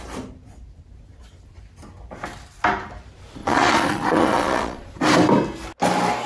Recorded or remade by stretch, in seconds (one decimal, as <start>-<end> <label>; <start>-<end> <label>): 0.0-3.4 recorded; 3.4-5.0 remade; 5.0-6.3 recorded